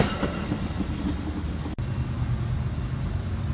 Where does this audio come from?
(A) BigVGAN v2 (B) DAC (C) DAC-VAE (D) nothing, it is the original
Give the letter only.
D